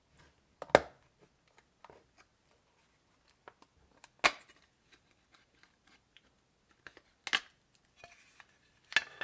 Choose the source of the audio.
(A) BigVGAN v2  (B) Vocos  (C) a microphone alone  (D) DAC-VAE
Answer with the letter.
C